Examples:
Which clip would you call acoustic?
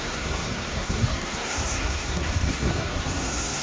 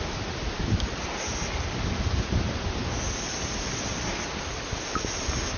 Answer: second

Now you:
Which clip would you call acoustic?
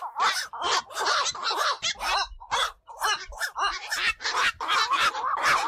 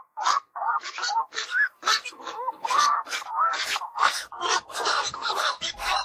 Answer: first